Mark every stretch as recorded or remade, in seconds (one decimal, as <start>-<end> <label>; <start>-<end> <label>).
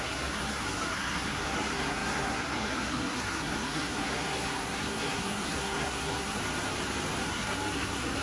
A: 0.0-6.4 remade; 6.4-7.2 recorded; 7.2-8.2 remade